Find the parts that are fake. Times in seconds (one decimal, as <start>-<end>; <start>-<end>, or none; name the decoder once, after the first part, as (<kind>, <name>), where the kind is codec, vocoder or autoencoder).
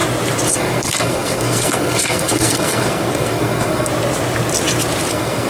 0.5-3.9 (codec, SNAC); 5.1-5.5